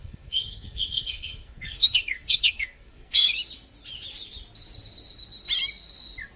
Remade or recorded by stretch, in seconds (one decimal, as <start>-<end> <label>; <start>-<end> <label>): 0.0-3.3 remade; 3.3-6.4 recorded